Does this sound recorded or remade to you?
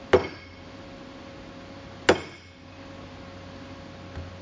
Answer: recorded